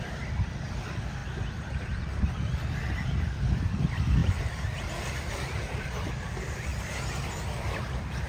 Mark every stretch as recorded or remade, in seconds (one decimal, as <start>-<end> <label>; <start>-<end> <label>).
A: 0.0-1.2 remade; 1.2-1.7 recorded; 1.7-6.7 remade; 6.7-7.3 recorded; 7.3-8.3 remade